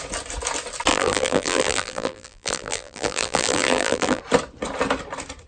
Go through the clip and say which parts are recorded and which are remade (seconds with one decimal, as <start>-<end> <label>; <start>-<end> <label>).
0.0-0.9 recorded; 0.9-4.2 remade; 4.2-5.5 recorded

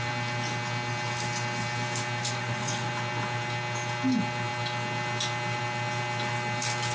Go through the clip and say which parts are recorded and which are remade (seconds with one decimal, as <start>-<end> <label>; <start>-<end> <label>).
0.0-2.2 recorded; 2.2-2.9 remade; 2.9-6.9 recorded